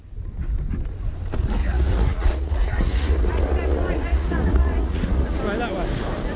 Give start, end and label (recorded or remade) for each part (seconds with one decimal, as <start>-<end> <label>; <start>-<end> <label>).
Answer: 0.0-1.6 recorded; 1.6-5.4 remade; 5.4-6.4 recorded